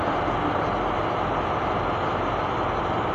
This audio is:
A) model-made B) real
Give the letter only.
B